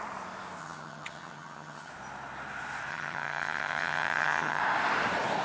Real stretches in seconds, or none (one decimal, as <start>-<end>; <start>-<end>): 0.0-0.6; 1.9-2.9; 4.6-5.4